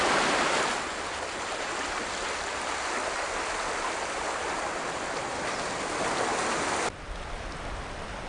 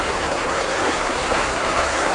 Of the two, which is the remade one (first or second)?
second